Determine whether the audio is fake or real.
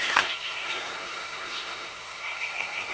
fake